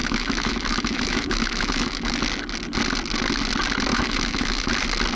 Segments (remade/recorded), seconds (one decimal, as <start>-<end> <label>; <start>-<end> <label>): 0.0-2.2 remade; 2.2-3.9 recorded; 3.9-4.7 remade; 4.7-5.2 recorded